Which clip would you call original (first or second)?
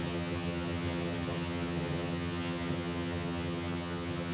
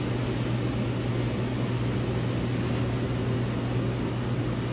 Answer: second